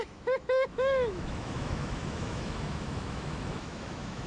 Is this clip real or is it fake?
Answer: fake